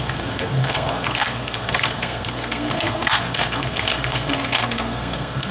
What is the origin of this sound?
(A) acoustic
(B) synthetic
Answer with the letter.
B